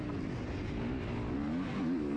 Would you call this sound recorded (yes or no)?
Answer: yes